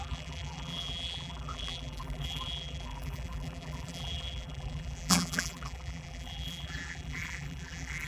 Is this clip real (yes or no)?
no